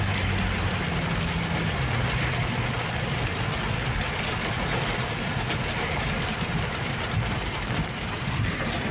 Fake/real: real